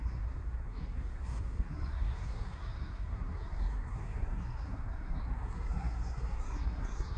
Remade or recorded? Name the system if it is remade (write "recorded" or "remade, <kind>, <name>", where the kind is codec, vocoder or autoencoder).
remade, codec, SNAC